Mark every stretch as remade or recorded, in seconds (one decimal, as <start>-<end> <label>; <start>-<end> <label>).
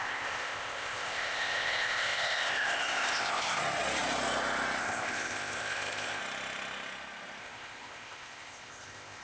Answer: 0.0-3.6 remade; 3.6-4.8 recorded; 4.8-6.2 remade; 6.2-7.4 recorded; 7.4-9.2 remade